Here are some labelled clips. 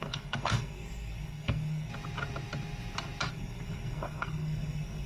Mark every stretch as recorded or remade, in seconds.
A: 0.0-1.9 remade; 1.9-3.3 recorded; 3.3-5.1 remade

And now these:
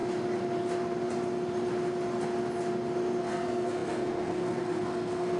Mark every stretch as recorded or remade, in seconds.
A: 0.0-3.2 recorded; 3.2-5.4 remade

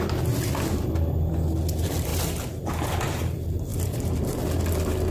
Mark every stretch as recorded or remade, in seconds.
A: 0.0-2.1 recorded; 2.1-2.7 remade; 2.7-3.7 recorded; 3.7-4.4 remade; 4.4-5.1 recorded

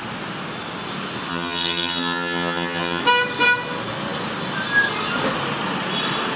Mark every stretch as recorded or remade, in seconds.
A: 0.0-1.3 recorded; 1.3-3.0 remade; 3.0-6.4 recorded

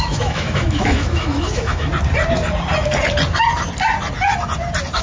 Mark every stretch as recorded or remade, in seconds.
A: 0.0-1.9 remade; 1.9-5.0 recorded

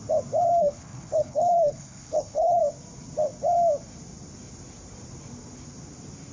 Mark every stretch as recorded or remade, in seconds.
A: 0.0-0.6 recorded; 0.6-2.6 remade; 2.6-6.3 recorded